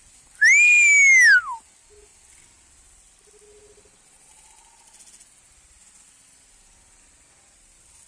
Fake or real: real